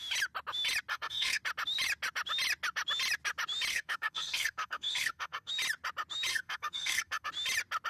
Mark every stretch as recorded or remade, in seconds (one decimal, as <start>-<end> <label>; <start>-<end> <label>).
0.0-0.9 recorded; 0.9-1.4 remade; 1.4-3.7 recorded; 3.7-5.5 remade; 5.5-6.3 recorded; 6.3-7.3 remade; 7.3-7.9 recorded